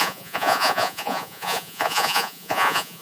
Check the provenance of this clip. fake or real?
fake